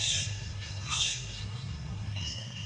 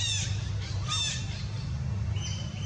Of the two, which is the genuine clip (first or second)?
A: second